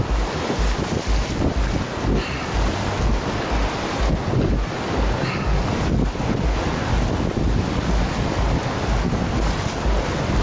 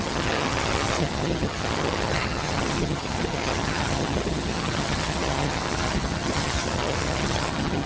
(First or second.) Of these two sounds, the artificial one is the second